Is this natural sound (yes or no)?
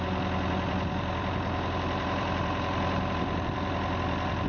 no